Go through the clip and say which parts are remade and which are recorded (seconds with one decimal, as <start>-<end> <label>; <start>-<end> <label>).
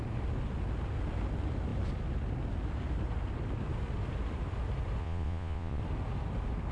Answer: 0.0-5.0 recorded; 5.0-5.8 remade; 5.8-6.7 recorded